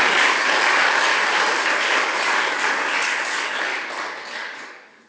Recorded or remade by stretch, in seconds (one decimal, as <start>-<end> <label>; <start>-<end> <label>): 0.0-1.1 remade; 1.1-1.8 recorded; 1.8-3.7 remade; 3.7-4.3 recorded; 4.3-5.1 remade